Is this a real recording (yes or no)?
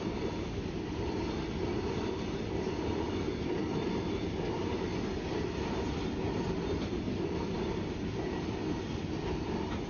yes